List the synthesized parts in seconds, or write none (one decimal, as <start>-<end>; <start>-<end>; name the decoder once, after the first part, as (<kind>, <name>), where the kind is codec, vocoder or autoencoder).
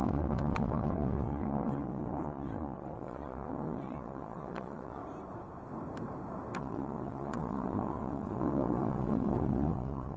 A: 0.0-5.0 (vocoder, WaveNeXt); 6.6-10.2